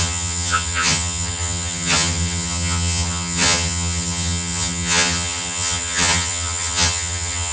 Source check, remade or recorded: remade